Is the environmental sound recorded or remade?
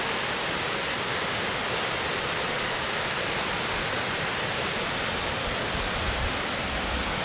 remade